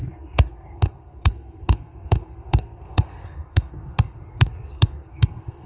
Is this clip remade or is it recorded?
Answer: remade